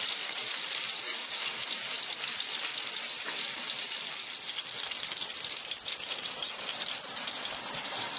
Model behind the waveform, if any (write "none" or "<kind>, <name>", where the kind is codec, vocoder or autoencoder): none